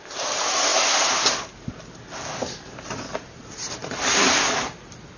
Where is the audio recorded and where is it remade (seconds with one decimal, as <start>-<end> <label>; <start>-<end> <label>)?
0.0-0.7 remade; 0.7-3.2 recorded; 3.2-5.2 remade